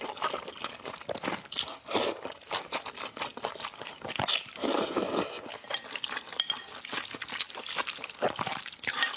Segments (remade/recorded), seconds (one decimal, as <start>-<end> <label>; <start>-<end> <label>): 0.0-9.2 recorded